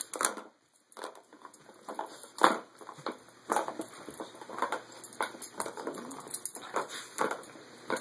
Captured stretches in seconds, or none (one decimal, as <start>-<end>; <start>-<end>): 0.0-1.3; 1.9-8.0